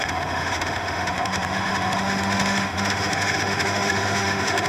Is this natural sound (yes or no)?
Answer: no